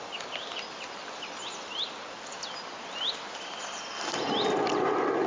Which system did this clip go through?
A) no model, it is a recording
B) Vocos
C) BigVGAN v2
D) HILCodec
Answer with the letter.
A